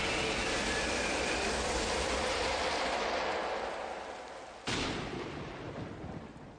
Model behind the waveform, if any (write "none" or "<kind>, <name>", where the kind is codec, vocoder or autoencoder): none